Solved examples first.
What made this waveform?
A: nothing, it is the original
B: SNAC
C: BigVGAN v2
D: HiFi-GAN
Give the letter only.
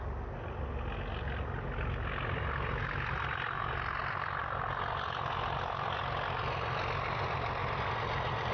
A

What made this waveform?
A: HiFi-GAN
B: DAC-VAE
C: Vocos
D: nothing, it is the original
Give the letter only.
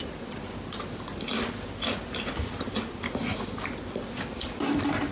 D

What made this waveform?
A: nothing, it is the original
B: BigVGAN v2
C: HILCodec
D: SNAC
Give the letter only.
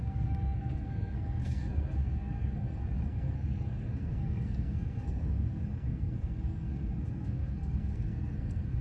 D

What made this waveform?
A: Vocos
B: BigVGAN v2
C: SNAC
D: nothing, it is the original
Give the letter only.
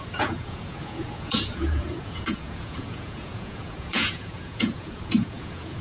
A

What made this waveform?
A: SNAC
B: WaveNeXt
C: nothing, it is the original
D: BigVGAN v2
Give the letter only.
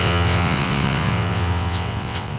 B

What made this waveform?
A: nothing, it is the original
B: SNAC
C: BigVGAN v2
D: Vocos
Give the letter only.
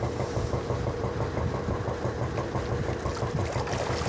A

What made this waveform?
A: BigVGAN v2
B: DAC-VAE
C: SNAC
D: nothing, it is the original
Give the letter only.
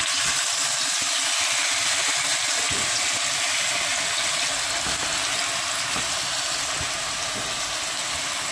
D